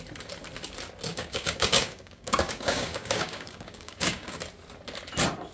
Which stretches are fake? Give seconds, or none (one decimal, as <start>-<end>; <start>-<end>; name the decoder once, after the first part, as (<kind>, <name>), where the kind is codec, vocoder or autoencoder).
1.1-4.4 (codec, DAC)